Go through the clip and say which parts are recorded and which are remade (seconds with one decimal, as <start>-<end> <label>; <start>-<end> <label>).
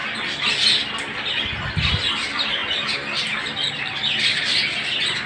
0.0-5.3 recorded